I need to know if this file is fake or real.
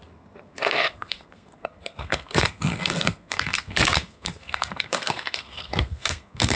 fake